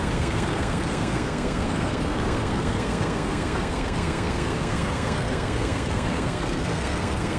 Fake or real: fake